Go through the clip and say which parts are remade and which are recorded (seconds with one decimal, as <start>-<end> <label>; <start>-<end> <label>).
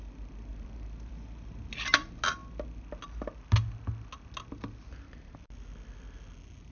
0.0-0.5 recorded; 0.5-1.1 remade; 1.1-6.7 recorded